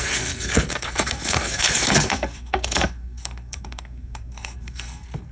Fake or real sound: fake